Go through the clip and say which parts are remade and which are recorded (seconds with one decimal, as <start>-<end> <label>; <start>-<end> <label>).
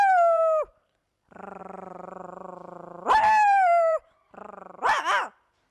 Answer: 0.0-5.7 remade